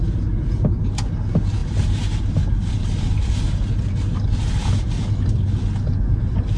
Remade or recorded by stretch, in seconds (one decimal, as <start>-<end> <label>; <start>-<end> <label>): 0.0-6.6 recorded

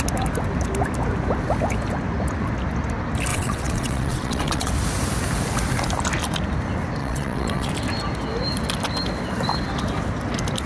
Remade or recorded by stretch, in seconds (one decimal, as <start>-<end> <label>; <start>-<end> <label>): 0.0-3.3 recorded; 3.3-4.7 remade; 4.7-7.0 recorded; 7.0-7.7 remade; 7.7-10.7 recorded

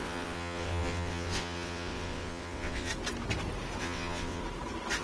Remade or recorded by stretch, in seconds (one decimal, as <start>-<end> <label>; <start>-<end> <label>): 0.0-2.9 remade; 2.9-3.8 recorded; 3.8-4.4 remade; 4.4-5.0 recorded

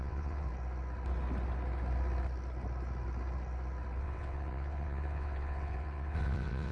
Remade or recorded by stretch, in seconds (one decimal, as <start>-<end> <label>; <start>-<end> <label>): 0.0-0.5 remade; 0.5-4.0 recorded; 4.0-6.7 remade

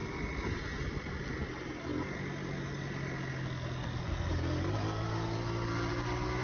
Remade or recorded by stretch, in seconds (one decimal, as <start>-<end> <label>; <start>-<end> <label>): 0.0-6.4 recorded

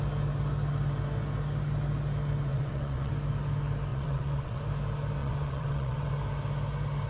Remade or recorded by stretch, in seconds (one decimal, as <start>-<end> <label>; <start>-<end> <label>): 0.0-2.5 recorded; 2.5-3.1 remade; 3.1-3.9 recorded; 3.9-4.6 remade; 4.6-5.2 recorded; 5.2-6.1 remade; 6.1-7.1 recorded

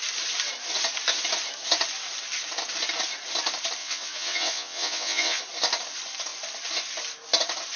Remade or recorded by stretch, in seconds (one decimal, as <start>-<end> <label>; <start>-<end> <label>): 0.0-3.8 recorded; 3.8-5.4 remade; 5.4-7.8 recorded

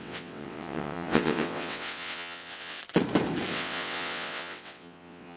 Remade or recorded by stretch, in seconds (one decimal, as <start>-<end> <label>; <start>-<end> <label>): 0.0-2.8 remade; 2.8-3.5 recorded; 3.5-5.4 remade